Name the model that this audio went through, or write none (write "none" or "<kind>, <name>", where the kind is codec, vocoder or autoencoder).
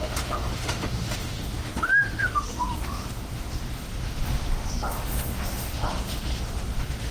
autoencoder, DAC-VAE